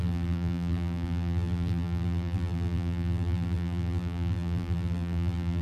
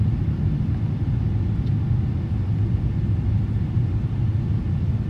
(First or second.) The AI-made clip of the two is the first